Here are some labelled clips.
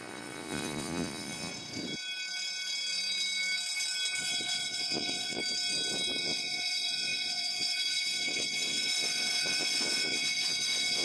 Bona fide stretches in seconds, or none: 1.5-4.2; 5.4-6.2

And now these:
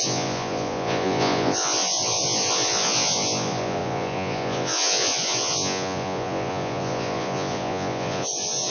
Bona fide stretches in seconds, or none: none